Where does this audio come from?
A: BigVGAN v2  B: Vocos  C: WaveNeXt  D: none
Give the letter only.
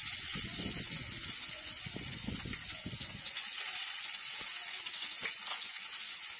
B